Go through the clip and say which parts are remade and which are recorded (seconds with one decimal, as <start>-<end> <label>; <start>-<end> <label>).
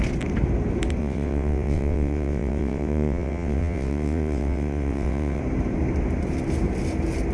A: 0.0-1.0 recorded; 1.0-5.4 remade; 5.4-7.3 recorded